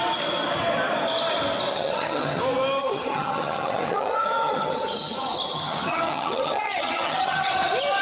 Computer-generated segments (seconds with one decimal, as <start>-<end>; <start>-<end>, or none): 1.7-2.4; 2.8-7.5